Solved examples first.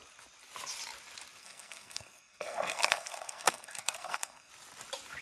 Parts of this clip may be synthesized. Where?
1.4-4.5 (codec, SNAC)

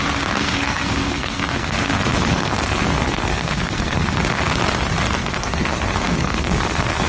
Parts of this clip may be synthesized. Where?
0.4-4.2 (codec, SNAC); 5.2-7.1

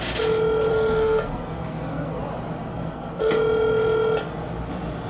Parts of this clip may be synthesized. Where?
0.7-2.2 (codec, SNAC); 2.6-3.3

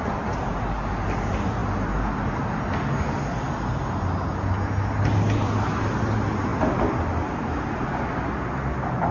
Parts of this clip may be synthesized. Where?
none

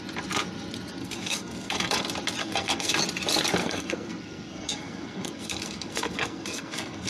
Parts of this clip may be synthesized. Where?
1.0-2.0 (codec, SNAC); 2.4-2.9; 3.6-7.1

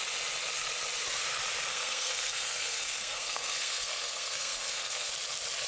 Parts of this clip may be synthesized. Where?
1.7-5.1 (codec, SNAC)

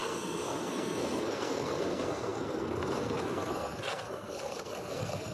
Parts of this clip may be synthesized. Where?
0.0-5.3 (codec, SNAC)

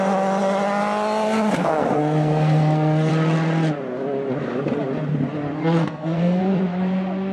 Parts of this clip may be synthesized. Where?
1.6-3.1 (codec, SNAC); 5.6-6.4